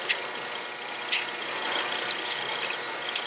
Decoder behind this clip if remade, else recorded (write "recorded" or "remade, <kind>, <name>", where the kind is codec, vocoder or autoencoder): recorded